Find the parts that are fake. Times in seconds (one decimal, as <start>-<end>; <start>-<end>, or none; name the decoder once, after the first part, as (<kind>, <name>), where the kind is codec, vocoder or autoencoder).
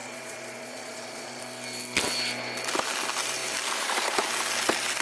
0.0-1.4 (vocoder, Vocos)